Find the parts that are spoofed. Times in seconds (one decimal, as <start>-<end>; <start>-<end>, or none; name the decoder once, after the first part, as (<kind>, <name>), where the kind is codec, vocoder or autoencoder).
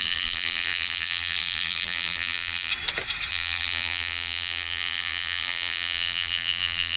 0.0-2.7 (vocoder, BigVGAN v2); 3.3-7.0